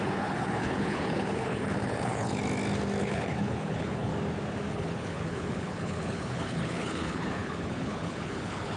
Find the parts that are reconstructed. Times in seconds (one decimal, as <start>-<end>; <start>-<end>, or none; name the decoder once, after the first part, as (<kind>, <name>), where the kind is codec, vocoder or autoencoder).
0.0-2.4 (codec, HILCodec); 3.0-4.1; 4.7-8.8